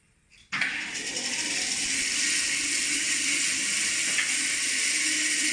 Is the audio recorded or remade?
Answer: remade